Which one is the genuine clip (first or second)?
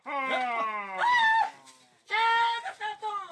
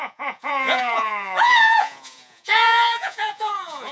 first